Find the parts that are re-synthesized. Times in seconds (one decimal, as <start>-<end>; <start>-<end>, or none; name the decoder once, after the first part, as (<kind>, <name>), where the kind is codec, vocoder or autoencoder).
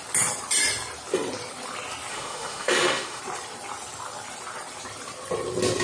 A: 2.1-3.2 (autoencoder, DAC-VAE)